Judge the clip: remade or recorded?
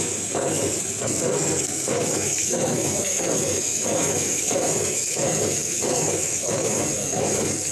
remade